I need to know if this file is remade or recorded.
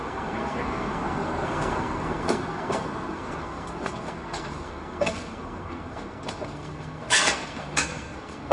remade